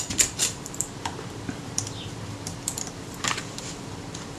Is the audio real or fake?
fake